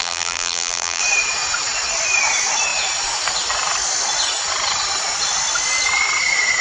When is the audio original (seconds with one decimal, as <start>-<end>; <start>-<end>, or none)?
1.0-6.6